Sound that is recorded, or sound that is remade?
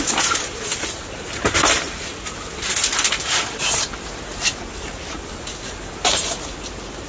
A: recorded